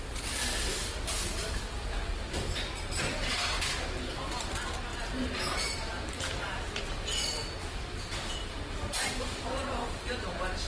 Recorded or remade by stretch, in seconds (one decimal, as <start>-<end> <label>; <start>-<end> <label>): 0.0-10.7 recorded